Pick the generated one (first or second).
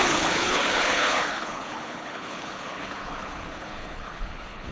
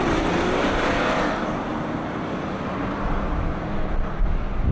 first